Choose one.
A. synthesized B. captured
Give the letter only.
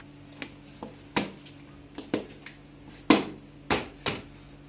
B